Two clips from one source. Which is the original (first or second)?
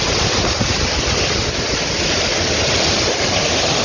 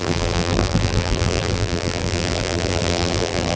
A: first